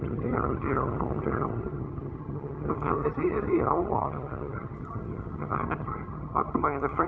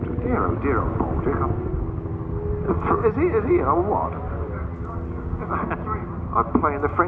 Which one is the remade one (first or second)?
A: first